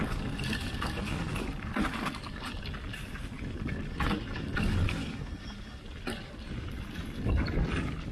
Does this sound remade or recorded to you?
recorded